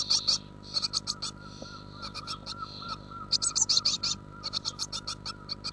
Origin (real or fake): fake